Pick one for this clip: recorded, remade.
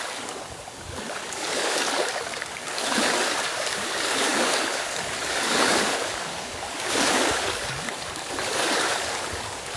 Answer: remade